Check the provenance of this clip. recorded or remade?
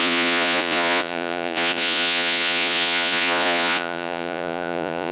remade